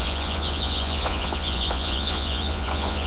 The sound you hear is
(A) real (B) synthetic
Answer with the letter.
B